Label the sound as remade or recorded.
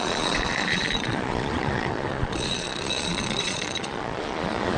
remade